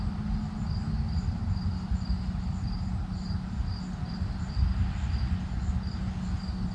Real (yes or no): yes